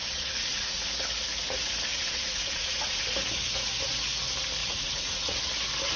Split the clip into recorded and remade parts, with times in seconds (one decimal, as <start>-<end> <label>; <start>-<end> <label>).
0.0-0.9 remade; 0.9-1.9 recorded; 1.9-3.0 remade; 3.0-4.6 recorded; 4.6-5.4 remade; 5.4-6.0 recorded

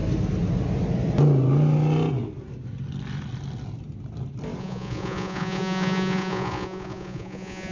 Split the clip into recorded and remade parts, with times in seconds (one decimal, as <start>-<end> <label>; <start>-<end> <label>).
0.0-4.6 recorded; 4.6-7.7 remade

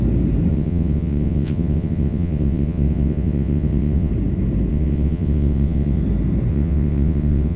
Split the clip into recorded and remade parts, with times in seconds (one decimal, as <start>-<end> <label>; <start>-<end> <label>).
0.0-0.5 recorded; 0.5-4.1 remade; 4.1-4.7 recorded; 4.7-6.0 remade; 6.0-6.5 recorded; 6.5-7.6 remade